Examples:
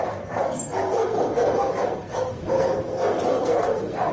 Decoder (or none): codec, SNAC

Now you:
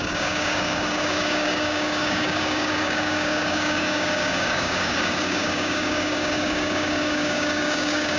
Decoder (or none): codec, DAC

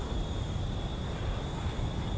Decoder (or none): none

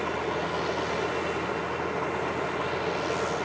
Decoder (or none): none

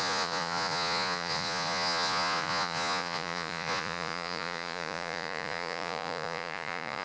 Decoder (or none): vocoder, Vocos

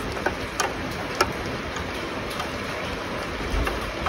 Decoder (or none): none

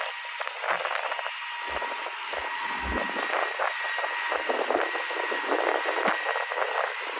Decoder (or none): none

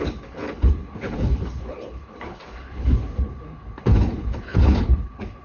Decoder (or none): codec, HILCodec